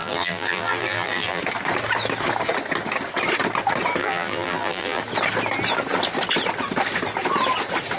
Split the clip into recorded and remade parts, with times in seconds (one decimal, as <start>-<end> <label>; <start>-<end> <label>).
0.0-1.4 remade; 1.4-4.0 recorded; 4.0-5.0 remade; 5.0-8.0 recorded